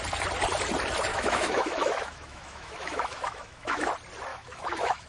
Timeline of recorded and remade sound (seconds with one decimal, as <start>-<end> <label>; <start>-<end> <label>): 0.0-1.1 recorded; 1.1-3.9 remade; 3.9-4.3 recorded; 4.3-5.1 remade